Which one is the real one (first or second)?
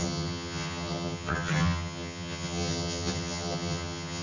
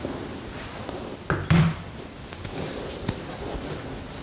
second